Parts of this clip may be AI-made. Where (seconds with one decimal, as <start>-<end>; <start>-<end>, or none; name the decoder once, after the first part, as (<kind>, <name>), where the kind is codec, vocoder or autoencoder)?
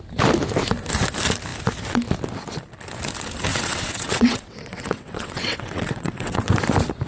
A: 3.5-6.5 (vocoder, WaveNeXt)